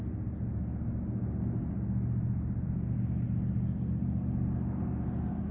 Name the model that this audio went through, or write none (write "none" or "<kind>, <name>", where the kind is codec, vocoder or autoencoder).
none